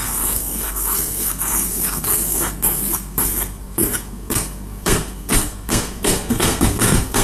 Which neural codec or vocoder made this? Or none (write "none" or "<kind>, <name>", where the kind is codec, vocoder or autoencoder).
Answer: codec, SNAC